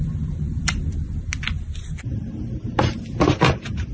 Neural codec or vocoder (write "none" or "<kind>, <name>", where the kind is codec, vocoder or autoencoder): none